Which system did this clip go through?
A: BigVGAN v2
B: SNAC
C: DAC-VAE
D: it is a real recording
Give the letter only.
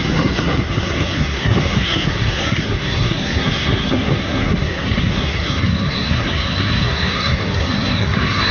B